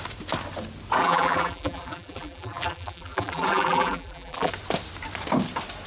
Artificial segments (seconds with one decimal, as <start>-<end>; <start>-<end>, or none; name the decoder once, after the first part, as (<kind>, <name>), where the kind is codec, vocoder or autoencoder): 1.0-4.5 (vocoder, BigVGAN v2)